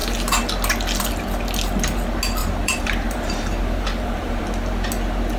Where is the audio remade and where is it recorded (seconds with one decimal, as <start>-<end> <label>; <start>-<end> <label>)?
0.0-2.4 recorded; 2.4-4.4 remade; 4.4-5.4 recorded